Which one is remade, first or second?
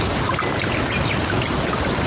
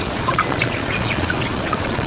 second